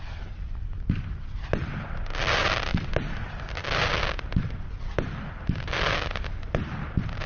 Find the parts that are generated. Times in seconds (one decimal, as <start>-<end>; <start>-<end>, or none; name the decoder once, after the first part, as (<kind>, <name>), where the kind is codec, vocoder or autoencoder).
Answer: none